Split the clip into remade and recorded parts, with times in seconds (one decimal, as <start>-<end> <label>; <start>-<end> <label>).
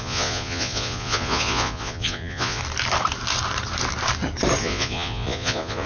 0.0-2.6 remade; 2.6-4.6 recorded; 4.6-5.9 remade